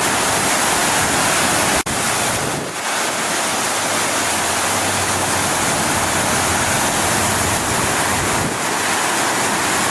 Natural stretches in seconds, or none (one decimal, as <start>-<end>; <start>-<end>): 0.0-9.9